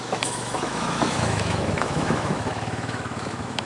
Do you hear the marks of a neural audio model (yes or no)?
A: yes